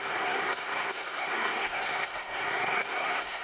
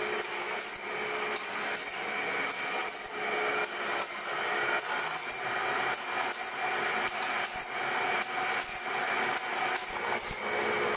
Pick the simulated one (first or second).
first